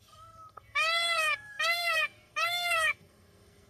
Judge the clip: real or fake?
fake